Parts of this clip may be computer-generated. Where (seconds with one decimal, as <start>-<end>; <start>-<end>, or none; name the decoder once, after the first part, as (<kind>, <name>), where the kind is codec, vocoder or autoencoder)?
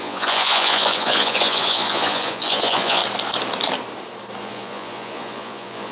0.0-3.0 (vocoder, Vocos); 4.4-5.9